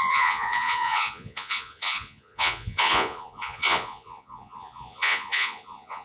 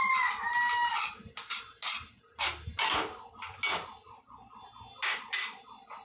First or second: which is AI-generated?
first